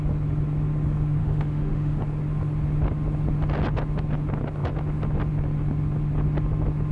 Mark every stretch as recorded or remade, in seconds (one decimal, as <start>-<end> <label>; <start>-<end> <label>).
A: 0.0-1.2 recorded; 1.2-2.0 remade; 2.0-6.9 recorded